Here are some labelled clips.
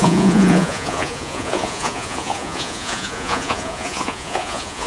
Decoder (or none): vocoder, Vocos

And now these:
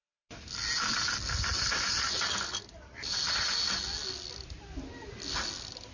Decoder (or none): none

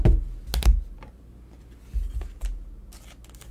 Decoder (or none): none